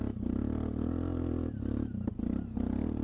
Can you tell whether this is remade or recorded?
recorded